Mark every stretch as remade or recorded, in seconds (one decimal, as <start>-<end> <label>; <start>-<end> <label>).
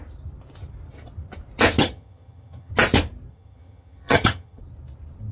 0.0-1.8 recorded; 1.8-2.7 remade; 2.7-3.3 recorded; 3.3-4.6 remade; 4.6-5.3 recorded